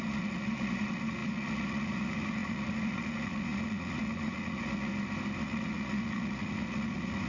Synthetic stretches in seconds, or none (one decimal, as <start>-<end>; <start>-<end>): 0.0-4.9; 5.4-7.3